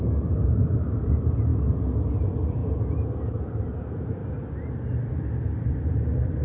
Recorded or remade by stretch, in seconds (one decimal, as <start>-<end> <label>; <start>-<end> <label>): 0.0-1.5 remade; 1.5-2.1 recorded; 2.1-4.2 remade; 4.2-5.1 recorded; 5.1-6.4 remade